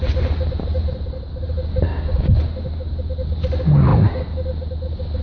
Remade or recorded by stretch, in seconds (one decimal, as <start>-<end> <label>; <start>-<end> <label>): 0.0-1.9 recorded; 1.9-2.4 remade; 2.4-5.2 recorded